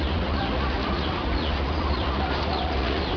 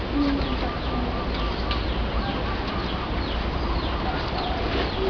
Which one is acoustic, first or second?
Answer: second